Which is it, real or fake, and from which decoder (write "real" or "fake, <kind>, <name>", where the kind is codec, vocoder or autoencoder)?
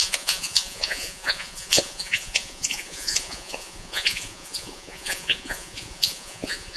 fake, vocoder, Vocos